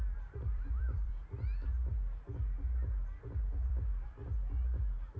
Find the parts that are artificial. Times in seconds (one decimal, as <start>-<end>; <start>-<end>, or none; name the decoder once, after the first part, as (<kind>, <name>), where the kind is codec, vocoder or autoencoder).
0.0-1.1 (vocoder, BigVGAN v2); 3.5-4.2